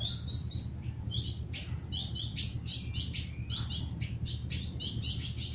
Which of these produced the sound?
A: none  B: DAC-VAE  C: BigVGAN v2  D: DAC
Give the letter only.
A